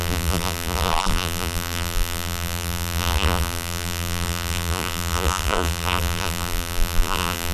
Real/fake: fake